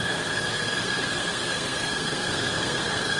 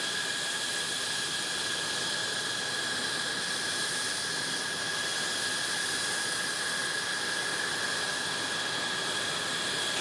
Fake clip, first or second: first